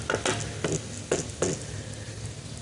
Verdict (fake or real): real